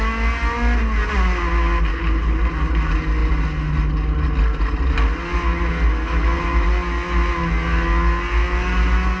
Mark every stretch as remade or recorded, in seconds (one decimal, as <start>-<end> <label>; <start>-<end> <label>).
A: 0.0-1.9 recorded; 1.9-2.4 remade; 2.4-9.2 recorded